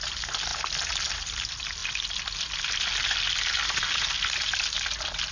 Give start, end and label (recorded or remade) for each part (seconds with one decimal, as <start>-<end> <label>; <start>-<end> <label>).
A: 0.0-5.3 recorded